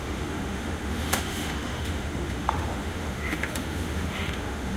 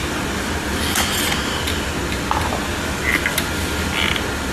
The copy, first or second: first